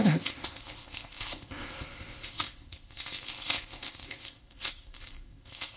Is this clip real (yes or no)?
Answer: no